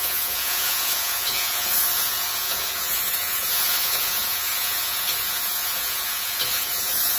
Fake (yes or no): yes